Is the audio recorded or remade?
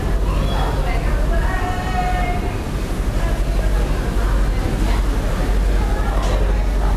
recorded